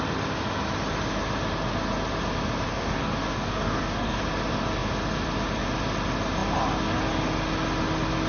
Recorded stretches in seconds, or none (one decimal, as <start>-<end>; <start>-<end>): 0.0-2.7; 4.2-8.3